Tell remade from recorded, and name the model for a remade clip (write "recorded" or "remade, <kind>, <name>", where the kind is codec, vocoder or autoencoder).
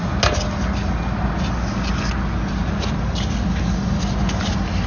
recorded